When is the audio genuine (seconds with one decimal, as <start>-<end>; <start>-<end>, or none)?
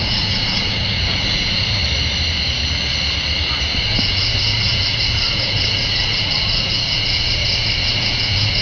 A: 1.8-3.7